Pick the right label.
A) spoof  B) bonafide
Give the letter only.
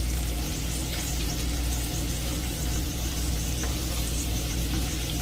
A